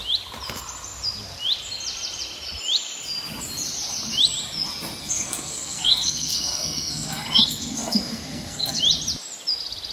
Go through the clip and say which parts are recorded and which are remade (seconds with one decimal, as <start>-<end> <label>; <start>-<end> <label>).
0.0-5.0 recorded; 5.0-8.8 remade; 8.8-9.9 recorded